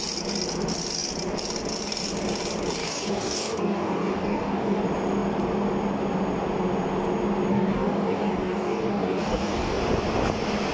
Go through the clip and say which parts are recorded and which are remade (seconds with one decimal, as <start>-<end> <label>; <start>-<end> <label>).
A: 0.0-2.8 recorded; 2.8-4.8 remade; 4.8-7.5 recorded; 7.5-9.8 remade; 9.8-10.7 recorded